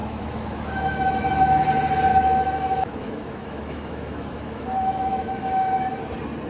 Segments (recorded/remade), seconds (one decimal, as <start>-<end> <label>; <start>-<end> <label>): 0.0-1.6 remade; 1.6-2.1 recorded; 2.1-6.0 remade; 6.0-6.5 recorded